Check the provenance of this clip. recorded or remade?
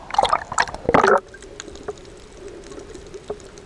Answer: recorded